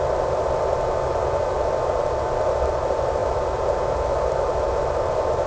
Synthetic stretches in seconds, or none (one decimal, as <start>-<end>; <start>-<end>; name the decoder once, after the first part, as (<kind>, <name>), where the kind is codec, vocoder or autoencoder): none

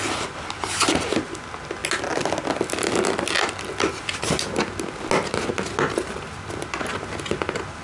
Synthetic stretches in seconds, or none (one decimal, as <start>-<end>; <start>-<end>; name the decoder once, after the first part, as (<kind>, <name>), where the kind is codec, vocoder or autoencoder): none

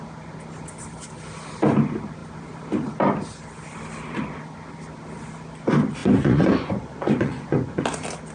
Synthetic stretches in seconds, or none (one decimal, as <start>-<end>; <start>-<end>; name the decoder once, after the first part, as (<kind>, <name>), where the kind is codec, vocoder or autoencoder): 6.0-7.8 (vocoder, Vocos)

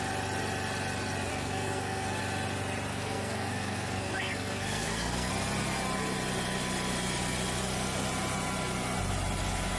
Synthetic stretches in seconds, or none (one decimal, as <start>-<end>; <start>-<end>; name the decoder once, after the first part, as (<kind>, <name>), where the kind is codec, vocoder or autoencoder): 1.3-2.2 (codec, SNAC); 2.9-5.3

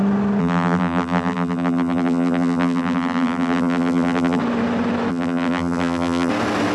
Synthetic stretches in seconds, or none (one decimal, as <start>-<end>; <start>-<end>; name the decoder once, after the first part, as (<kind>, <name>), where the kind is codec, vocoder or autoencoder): 0.4-4.4 (vocoder, BigVGAN v2); 5.1-6.3

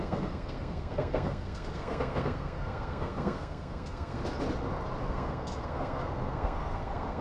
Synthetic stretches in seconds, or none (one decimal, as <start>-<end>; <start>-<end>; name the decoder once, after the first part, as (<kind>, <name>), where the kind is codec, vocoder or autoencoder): 0.0-4.2 (codec, SNAC); 5.0-7.2

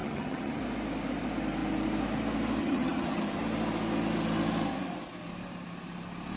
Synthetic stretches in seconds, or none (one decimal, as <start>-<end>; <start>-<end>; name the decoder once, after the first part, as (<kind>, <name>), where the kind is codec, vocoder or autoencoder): 0.0-0.6 (vocoder, HiFi-GAN); 2.6-3.4

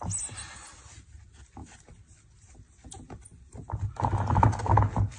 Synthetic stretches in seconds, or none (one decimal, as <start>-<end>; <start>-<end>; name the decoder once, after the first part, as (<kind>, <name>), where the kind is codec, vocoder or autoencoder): 1.6-4.7 (vocoder, BigVGAN v2)